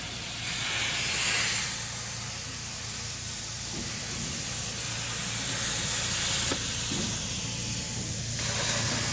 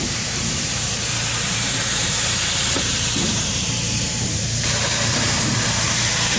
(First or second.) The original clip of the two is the first